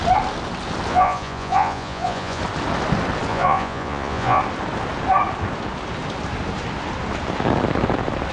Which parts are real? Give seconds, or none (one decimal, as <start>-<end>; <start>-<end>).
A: 0.0-0.9; 2.4-3.3; 4.4-8.3